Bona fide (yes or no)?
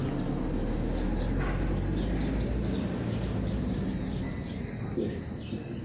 yes